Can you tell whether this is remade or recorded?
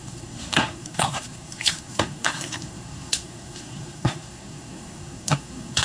remade